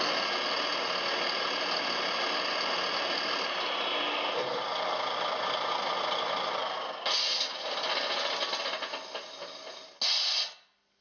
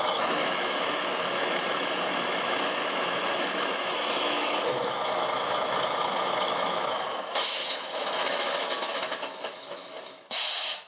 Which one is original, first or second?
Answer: first